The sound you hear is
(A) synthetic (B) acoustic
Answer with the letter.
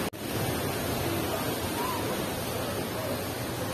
B